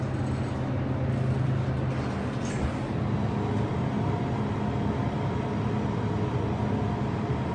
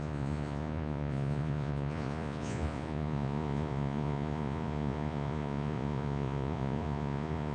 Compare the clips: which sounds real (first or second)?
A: first